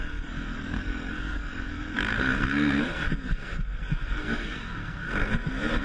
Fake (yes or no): yes